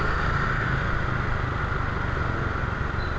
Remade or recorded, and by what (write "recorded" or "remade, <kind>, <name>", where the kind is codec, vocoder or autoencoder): recorded